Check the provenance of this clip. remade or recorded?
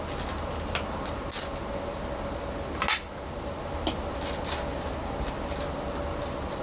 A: recorded